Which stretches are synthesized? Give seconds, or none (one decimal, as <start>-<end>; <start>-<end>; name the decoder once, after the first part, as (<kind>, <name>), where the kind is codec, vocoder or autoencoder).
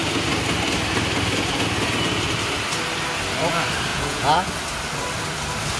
3.9-4.5 (vocoder, Vocos)